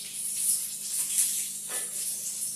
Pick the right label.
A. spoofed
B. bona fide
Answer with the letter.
B